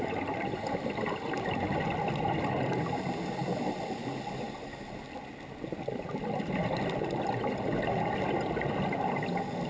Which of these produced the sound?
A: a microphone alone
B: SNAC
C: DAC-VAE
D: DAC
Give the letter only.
A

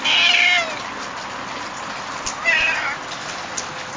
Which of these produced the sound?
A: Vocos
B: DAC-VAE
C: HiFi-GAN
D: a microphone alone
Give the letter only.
D